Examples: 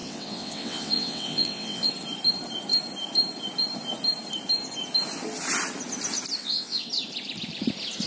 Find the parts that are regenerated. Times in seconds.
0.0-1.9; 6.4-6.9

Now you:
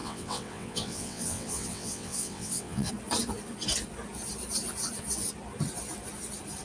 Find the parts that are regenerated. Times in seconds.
0.0-2.9

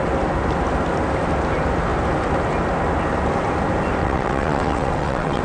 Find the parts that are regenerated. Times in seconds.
4.0-5.4

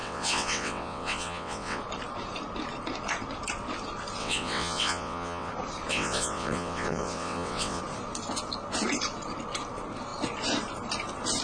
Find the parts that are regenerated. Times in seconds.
0.0-1.8; 4.2-5.5; 5.9-7.8

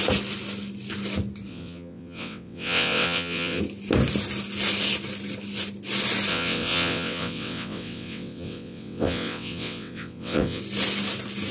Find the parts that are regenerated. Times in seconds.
1.5-3.6; 6.3-10.6

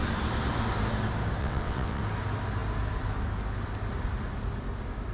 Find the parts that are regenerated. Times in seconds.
1.4-2.0

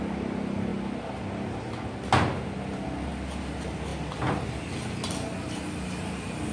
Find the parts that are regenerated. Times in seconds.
none